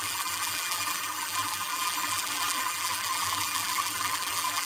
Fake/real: fake